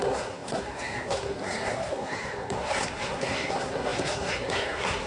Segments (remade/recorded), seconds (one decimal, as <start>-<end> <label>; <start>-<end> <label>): 0.0-5.1 remade